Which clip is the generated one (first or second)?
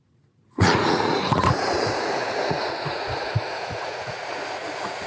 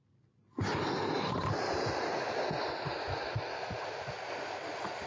first